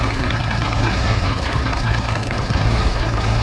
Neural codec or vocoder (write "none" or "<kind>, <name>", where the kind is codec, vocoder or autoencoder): codec, SNAC